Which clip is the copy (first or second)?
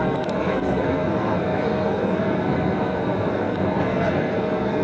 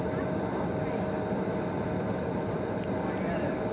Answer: first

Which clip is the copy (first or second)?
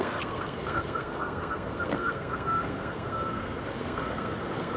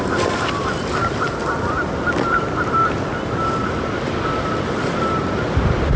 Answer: first